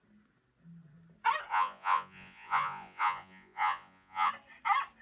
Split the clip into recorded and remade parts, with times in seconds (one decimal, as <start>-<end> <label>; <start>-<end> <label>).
0.0-1.5 recorded; 1.5-4.3 remade; 4.3-5.0 recorded